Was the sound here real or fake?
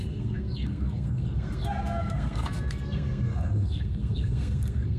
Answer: fake